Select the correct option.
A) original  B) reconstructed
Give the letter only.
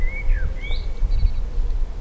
A